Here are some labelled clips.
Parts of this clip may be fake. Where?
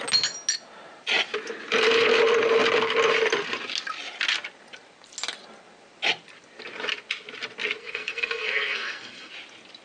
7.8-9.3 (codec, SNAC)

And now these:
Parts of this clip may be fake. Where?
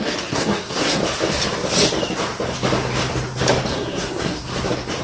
0.0-1.0 (codec, SNAC); 3.7-4.5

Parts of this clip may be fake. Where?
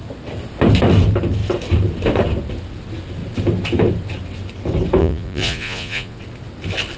5.0-6.2 (vocoder, Vocos)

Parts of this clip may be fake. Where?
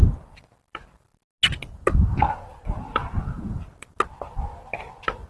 0.0-1.1 (vocoder, BigVGAN v2); 1.8-5.3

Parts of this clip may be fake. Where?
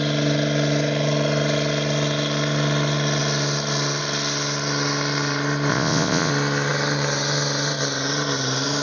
5.7-6.3 (vocoder, Vocos)